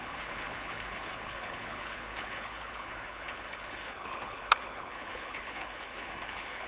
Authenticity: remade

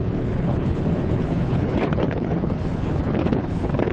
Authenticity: remade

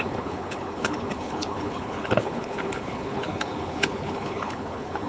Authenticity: remade